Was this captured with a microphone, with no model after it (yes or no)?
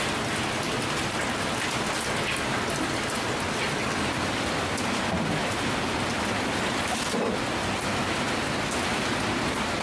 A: yes